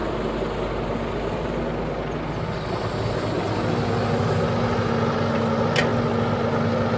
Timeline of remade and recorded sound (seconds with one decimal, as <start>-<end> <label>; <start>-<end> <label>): 0.0-7.0 recorded